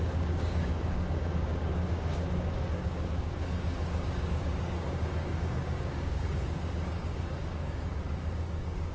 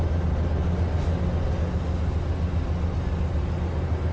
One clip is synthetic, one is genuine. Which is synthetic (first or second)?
first